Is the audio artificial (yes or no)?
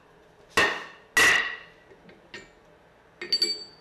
no